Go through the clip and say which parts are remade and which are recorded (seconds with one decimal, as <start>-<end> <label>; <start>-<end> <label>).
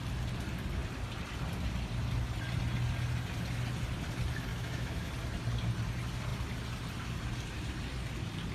0.0-4.5 recorded; 4.5-5.1 remade; 5.1-8.5 recorded